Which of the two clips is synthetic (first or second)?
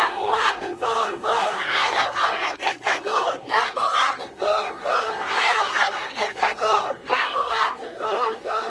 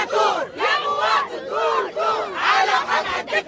first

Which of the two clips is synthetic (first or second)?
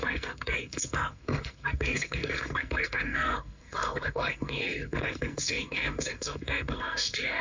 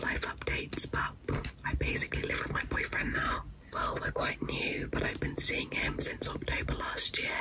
first